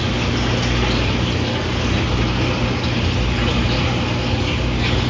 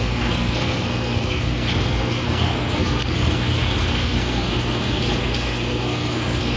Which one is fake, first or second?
second